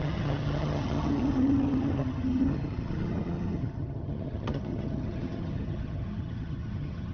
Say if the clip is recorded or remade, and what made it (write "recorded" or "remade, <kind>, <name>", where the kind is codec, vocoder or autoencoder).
remade, vocoder, HiFi-GAN